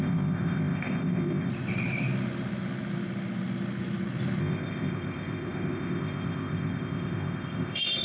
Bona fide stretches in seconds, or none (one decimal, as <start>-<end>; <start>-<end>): 1.5-4.4